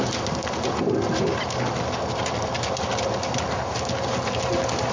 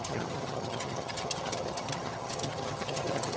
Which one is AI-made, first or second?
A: second